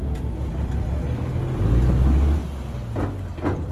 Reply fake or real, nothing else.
real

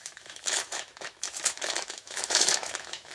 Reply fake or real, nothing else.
fake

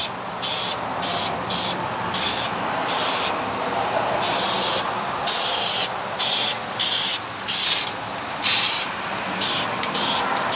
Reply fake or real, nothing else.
real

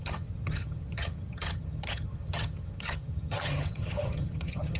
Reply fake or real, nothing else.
fake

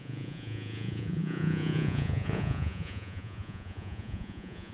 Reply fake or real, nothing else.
fake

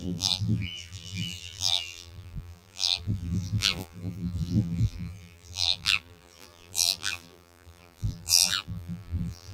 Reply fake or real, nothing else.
fake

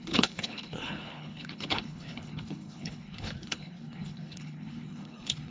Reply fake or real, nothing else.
fake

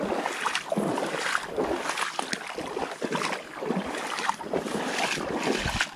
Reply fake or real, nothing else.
real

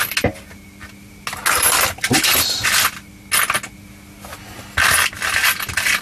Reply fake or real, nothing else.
real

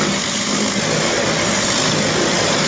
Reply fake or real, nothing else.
real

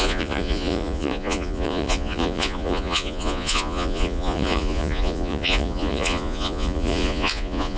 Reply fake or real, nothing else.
fake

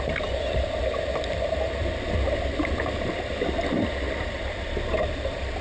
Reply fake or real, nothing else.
fake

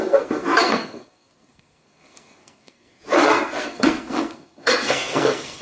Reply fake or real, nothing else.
fake